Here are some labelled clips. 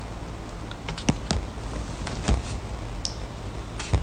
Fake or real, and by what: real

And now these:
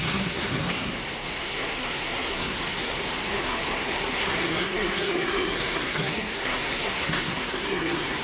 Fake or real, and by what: fake, codec, SNAC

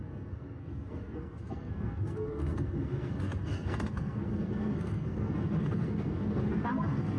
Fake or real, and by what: fake, codec, SNAC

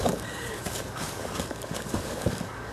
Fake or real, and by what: fake, codec, DAC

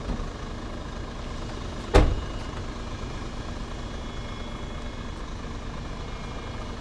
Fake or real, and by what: real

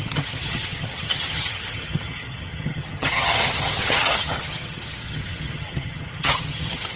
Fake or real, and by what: fake, vocoder, HiFi-GAN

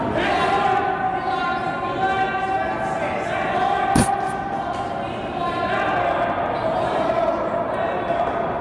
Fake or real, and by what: real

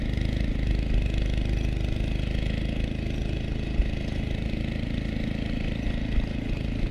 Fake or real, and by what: real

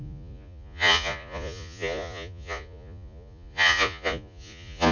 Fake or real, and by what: fake, vocoder, Vocos